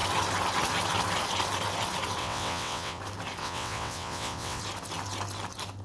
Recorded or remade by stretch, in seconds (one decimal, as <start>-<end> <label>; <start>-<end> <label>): 0.0-2.2 recorded; 2.2-3.0 remade; 3.0-3.4 recorded; 3.4-4.6 remade; 4.6-5.8 recorded